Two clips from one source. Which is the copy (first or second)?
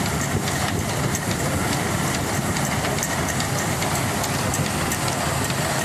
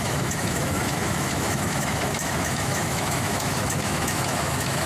second